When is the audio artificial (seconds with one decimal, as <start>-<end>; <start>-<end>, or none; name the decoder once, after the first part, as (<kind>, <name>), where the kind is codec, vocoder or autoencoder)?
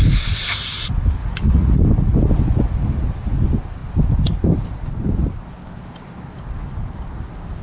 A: 1.2-1.8 (vocoder, Vocos)